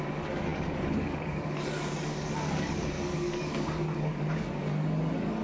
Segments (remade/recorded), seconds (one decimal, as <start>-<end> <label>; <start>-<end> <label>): 0.0-5.4 remade